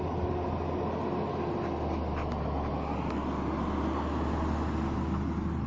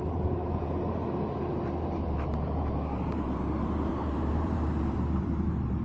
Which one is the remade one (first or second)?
second